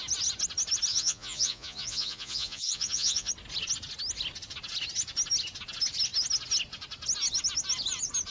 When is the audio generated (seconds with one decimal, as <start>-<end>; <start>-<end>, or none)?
0.9-3.3